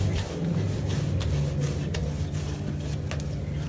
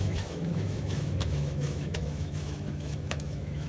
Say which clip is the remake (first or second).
second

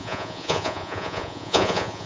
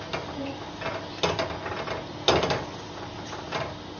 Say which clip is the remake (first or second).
first